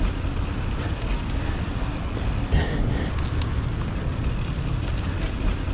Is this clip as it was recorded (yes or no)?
yes